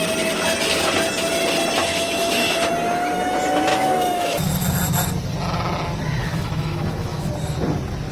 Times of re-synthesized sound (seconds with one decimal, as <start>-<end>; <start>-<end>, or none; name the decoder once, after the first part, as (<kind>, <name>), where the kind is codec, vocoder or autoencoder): 1.8-2.7 (autoencoder, DAC-VAE); 3.7-4.5; 6.2-7.3